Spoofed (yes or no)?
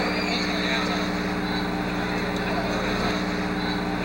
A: no